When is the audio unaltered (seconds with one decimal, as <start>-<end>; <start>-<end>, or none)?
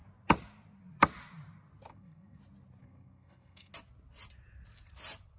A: 0.0-1.9; 2.4-2.8; 3.7-5.4